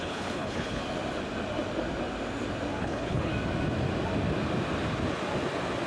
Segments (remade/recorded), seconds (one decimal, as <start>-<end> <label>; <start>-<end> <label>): 0.0-0.8 remade; 0.8-2.8 recorded; 2.8-3.3 remade; 3.3-5.9 recorded